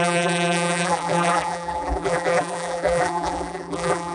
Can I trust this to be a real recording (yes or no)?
no